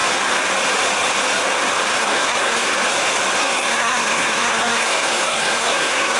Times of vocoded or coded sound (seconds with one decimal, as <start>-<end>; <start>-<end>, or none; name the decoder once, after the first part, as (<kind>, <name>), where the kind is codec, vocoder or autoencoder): 2.0-2.7 (codec, SNAC); 3.4-6.2